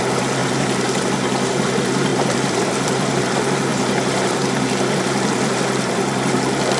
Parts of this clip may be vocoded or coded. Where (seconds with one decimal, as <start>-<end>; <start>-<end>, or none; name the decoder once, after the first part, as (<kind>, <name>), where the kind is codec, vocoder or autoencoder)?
2.1-3.2 (vocoder, BigVGAN v2)

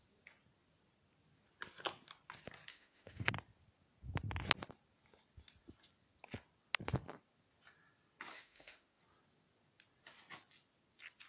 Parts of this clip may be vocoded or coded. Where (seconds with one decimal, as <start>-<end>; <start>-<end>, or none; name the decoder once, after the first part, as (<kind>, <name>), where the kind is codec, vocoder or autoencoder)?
2.7-3.3 (autoencoder, DAC-VAE); 8.3-9.0

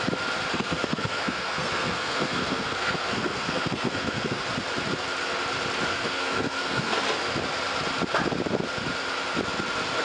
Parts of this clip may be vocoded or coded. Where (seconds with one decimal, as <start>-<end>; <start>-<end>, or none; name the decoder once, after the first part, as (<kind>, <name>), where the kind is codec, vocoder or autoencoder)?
0.5-4.4 (codec, SNAC); 5.9-7.0

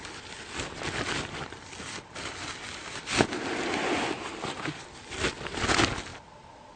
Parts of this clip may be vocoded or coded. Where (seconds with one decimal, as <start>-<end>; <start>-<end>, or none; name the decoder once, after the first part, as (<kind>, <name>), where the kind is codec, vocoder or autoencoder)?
none